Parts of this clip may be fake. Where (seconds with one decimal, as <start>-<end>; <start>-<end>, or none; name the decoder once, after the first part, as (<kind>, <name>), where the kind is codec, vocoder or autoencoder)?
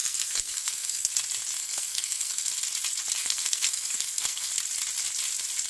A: 0.0-1.1 (codec, SNAC); 1.6-2.5; 3.2-4.5